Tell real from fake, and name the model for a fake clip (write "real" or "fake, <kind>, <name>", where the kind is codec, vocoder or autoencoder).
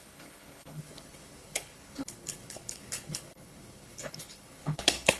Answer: fake, codec, HILCodec